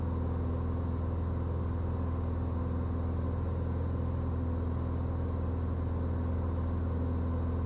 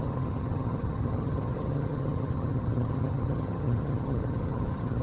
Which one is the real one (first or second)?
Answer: first